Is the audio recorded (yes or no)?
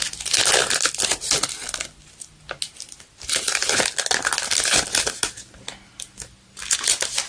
yes